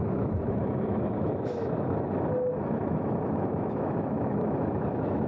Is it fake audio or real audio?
fake